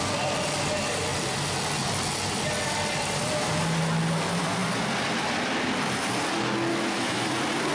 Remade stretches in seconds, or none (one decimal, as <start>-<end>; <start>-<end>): 6.7-7.3

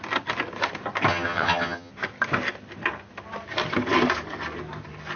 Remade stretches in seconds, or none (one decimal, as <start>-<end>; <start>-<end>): 1.1-1.9

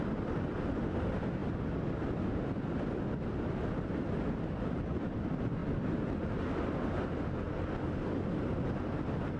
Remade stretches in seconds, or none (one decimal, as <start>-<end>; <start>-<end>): none